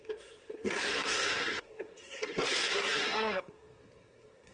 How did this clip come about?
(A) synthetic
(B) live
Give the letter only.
A